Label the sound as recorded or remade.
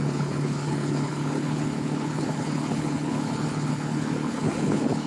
remade